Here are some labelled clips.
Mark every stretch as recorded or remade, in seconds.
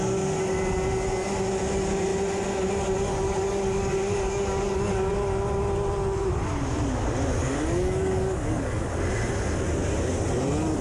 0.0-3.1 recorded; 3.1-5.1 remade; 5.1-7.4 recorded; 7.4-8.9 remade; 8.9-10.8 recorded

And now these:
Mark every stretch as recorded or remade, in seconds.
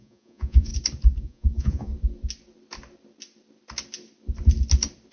0.0-0.7 remade; 0.7-1.2 recorded; 1.2-1.9 remade; 1.9-5.1 recorded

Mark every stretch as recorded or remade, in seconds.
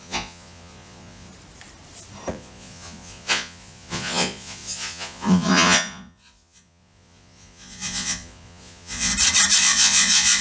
0.0-1.3 remade; 1.3-2.3 recorded; 2.3-9.1 remade; 9.1-9.6 recorded; 9.6-10.4 remade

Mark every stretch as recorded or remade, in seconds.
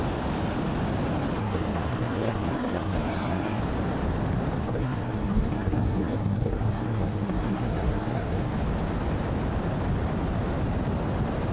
0.0-1.4 recorded; 1.4-3.6 remade; 3.6-4.6 recorded; 4.6-8.5 remade; 8.5-11.5 recorded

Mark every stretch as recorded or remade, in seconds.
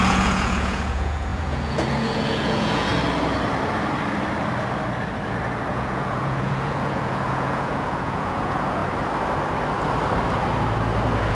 0.0-2.9 remade; 2.9-5.7 recorded; 5.7-8.8 remade; 8.8-11.3 recorded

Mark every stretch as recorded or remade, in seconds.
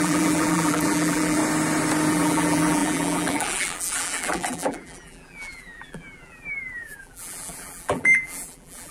0.0-1.4 remade; 1.4-2.1 recorded; 2.1-8.9 remade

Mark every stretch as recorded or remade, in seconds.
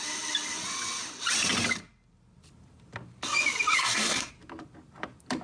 0.0-3.8 recorded; 3.8-4.3 remade; 4.3-5.4 recorded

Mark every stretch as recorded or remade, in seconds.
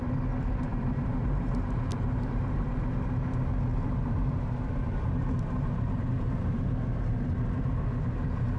0.0-0.7 recorded; 0.7-2.7 remade; 2.7-3.7 recorded; 3.7-6.7 remade; 6.7-8.6 recorded